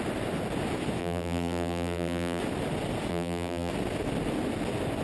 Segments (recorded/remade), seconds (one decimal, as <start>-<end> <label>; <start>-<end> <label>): 0.0-1.0 recorded; 1.0-2.4 remade; 2.4-3.1 recorded; 3.1-3.7 remade; 3.7-5.0 recorded